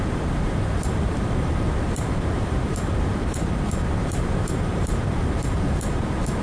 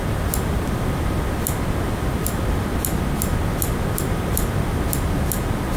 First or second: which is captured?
second